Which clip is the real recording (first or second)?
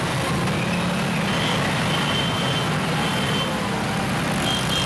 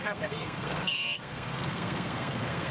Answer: first